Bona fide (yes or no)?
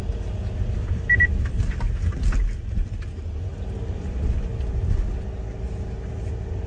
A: yes